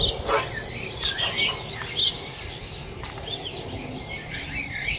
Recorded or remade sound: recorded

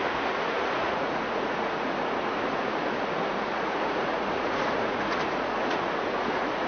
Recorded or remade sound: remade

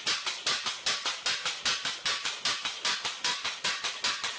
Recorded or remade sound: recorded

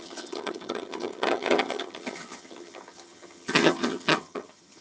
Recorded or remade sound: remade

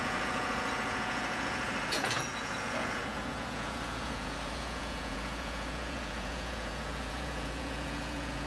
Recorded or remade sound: remade